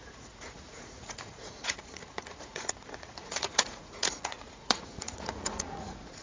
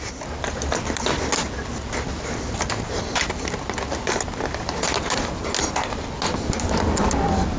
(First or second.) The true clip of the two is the second